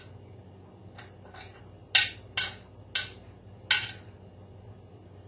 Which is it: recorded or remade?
recorded